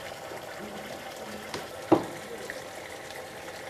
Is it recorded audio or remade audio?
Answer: recorded